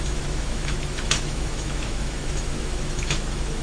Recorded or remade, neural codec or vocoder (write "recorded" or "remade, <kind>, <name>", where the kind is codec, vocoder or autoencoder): remade, autoencoder, DAC-VAE